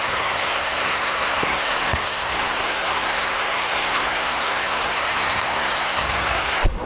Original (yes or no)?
no